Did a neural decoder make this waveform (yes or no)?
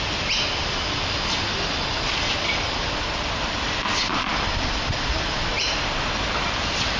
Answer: no